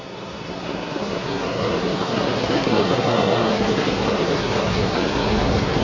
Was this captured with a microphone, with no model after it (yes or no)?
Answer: no